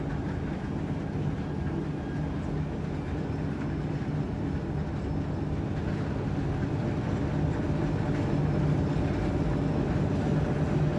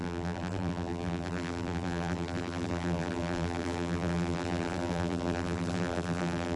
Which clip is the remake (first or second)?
second